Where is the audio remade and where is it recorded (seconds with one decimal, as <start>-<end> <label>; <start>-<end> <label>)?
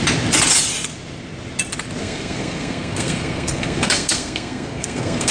0.0-2.0 recorded; 2.0-5.3 remade